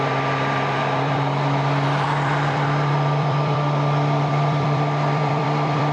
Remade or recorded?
remade